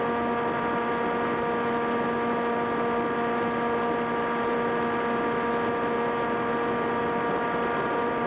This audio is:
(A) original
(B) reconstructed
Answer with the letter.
A